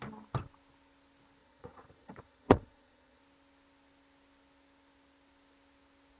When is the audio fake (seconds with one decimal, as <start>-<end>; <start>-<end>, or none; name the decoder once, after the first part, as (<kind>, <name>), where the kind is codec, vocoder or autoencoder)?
1.4-3.2 (vocoder, Vocos)